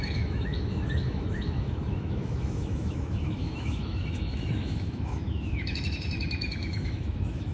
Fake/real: fake